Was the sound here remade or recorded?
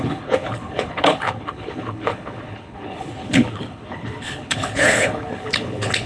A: remade